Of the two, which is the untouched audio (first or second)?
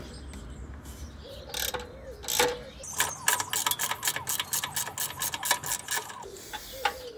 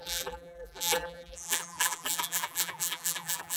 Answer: first